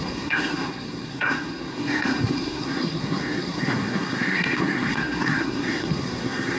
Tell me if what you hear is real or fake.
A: fake